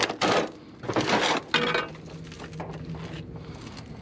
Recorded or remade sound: recorded